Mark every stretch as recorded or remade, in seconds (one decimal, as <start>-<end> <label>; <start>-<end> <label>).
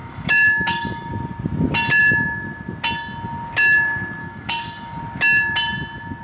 0.0-1.1 remade; 1.1-4.2 recorded; 4.2-5.0 remade; 5.0-6.2 recorded